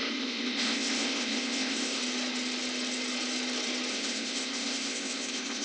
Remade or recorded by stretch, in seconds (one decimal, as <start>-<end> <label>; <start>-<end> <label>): 0.0-2.0 remade; 2.0-3.9 recorded; 3.9-5.6 remade